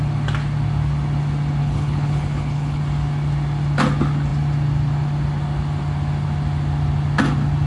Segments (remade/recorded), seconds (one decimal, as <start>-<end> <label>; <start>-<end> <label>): 0.0-1.6 recorded; 1.6-2.8 remade; 2.8-7.7 recorded